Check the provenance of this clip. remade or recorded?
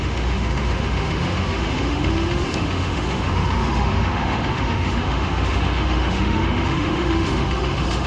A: remade